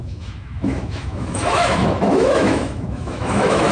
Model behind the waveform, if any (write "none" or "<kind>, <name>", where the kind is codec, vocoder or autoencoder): autoencoder, DAC-VAE